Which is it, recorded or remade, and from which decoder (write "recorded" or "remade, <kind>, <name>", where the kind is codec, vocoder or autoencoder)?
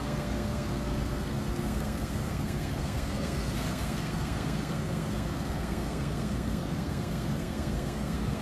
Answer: remade, codec, SNAC